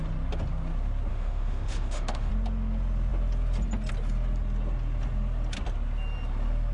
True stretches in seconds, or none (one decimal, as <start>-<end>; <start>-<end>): 0.0-1.1; 2.3-6.7